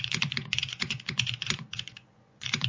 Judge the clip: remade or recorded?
remade